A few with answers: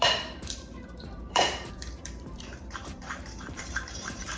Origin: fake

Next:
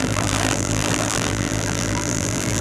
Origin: fake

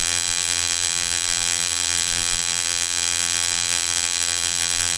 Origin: fake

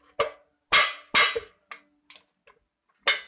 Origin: real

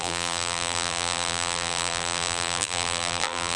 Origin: fake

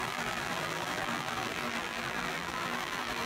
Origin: fake